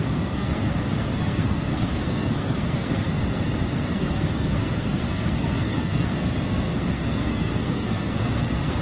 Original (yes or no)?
no